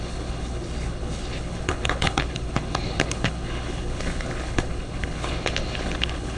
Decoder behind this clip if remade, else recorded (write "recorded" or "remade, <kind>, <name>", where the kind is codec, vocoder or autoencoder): remade, codec, HILCodec